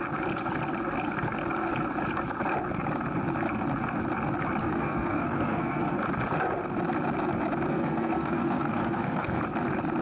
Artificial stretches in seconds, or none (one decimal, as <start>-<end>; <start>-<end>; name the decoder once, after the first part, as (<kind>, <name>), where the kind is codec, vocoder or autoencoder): 4.6-6.0 (codec, SNAC); 7.7-9.4